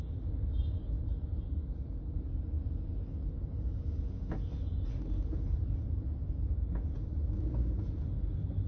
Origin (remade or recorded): recorded